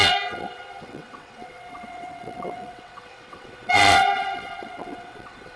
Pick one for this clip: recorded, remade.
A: remade